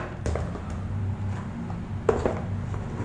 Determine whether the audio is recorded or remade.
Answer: recorded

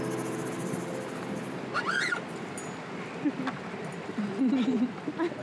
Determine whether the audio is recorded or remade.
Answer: recorded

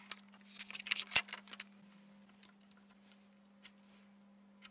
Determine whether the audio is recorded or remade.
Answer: recorded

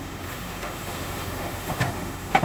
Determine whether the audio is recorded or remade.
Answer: remade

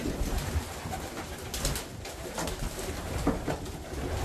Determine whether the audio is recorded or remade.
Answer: recorded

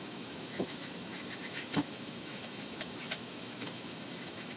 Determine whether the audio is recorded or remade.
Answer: remade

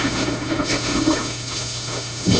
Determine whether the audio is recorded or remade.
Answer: remade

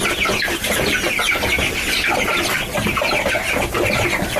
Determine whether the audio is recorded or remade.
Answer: recorded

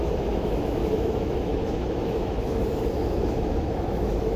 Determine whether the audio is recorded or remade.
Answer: remade